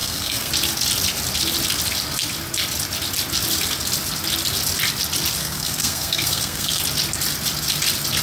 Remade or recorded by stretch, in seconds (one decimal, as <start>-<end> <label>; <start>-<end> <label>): 0.0-0.5 remade; 0.5-5.4 recorded; 5.4-6.8 remade; 6.8-8.2 recorded